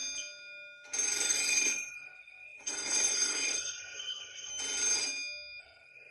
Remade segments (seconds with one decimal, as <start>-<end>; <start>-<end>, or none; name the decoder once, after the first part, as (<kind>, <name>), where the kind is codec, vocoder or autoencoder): 1.3-4.5 (codec, SNAC); 5.6-6.1